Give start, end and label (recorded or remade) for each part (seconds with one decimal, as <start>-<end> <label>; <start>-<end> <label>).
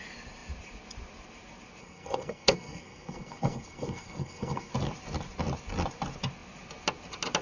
0.0-1.8 recorded; 1.8-4.7 remade; 4.7-7.4 recorded